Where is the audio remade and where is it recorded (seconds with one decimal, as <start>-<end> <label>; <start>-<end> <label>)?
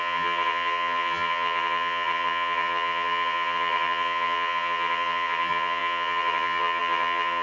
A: 0.0-7.4 remade